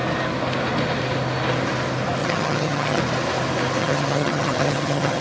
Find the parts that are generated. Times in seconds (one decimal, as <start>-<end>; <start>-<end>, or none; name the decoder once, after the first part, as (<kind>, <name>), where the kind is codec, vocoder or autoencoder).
2.2-3.0 (vocoder, HiFi-GAN); 3.8-5.2